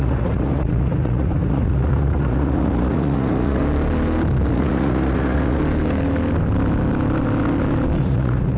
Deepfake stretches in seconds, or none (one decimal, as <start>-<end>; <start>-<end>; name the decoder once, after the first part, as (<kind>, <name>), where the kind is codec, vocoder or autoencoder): 0.0-3.6 (vocoder, Vocos); 4.5-5.6; 8.0-8.6